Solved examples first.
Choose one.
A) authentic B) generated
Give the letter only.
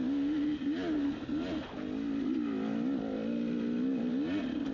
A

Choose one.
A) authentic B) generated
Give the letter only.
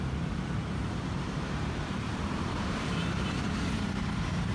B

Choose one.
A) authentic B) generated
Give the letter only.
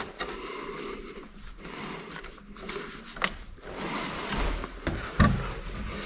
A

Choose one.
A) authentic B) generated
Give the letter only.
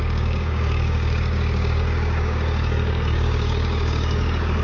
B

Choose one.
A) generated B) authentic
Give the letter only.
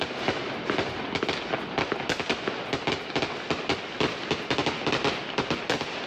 B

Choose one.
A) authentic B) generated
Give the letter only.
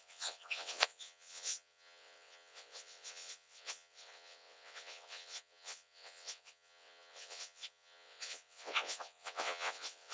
B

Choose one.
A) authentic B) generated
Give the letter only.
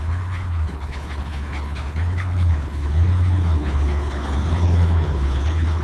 B